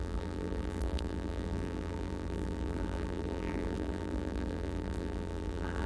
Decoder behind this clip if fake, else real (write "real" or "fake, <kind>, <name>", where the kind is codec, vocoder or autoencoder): fake, vocoder, BigVGAN v2